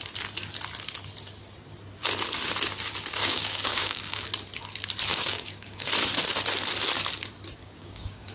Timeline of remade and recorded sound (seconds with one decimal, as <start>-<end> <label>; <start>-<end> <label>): 0.0-3.2 recorded; 3.2-4.3 remade; 4.3-5.1 recorded; 5.1-5.9 remade; 5.9-7.6 recorded; 7.6-8.3 remade